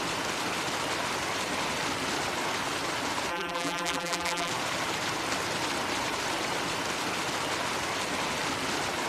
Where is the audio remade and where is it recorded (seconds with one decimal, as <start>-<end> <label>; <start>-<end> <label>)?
0.0-3.3 recorded; 3.3-4.5 remade; 4.5-9.1 recorded